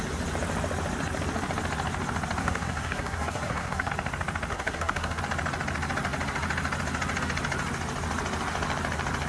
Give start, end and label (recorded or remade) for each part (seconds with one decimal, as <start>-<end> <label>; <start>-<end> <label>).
0.0-2.4 recorded; 2.4-3.9 remade; 3.9-4.5 recorded; 4.5-5.2 remade; 5.2-9.3 recorded